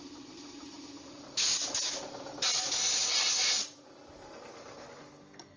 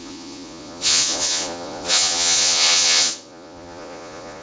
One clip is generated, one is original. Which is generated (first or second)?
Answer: second